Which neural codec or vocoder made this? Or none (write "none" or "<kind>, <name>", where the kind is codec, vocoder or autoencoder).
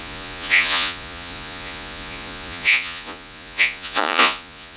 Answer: vocoder, Vocos